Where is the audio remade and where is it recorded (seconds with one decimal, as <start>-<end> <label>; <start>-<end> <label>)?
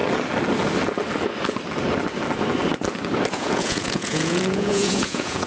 0.0-3.3 recorded; 3.3-5.5 remade